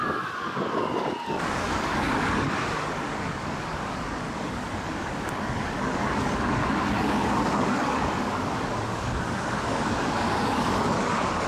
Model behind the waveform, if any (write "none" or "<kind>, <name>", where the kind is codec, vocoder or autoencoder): codec, DAC